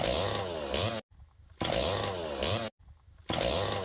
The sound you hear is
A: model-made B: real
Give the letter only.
B